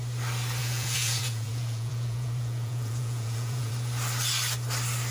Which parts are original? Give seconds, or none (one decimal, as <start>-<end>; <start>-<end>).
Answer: 0.0-0.6; 3.7-5.1